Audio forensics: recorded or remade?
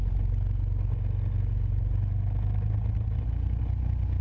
recorded